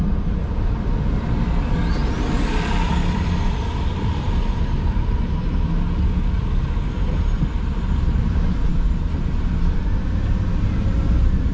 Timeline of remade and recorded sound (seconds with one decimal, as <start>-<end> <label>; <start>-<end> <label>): 0.0-2.0 recorded; 2.0-5.2 remade; 5.2-7.7 recorded; 7.7-8.7 remade; 8.7-9.1 recorded; 9.1-9.8 remade; 9.8-11.5 recorded